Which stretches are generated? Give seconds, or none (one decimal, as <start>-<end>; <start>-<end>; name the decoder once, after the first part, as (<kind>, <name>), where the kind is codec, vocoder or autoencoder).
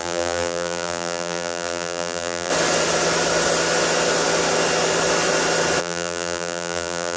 0.0-2.5 (vocoder, BigVGAN v2); 5.8-7.2